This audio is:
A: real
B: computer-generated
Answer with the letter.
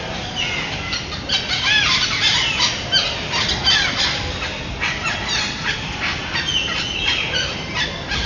A